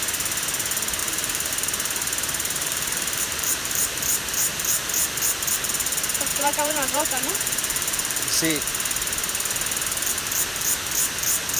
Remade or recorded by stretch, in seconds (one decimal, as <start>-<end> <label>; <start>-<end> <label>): 0.0-1.0 recorded; 1.0-1.5 remade; 1.5-2.6 recorded; 2.6-3.8 remade; 3.8-6.3 recorded; 6.3-8.7 remade; 8.7-11.6 recorded